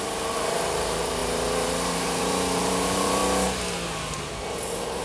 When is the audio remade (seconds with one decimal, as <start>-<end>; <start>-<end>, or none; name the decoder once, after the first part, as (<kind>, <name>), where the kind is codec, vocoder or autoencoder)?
0.0-3.2 (vocoder, BigVGAN v2)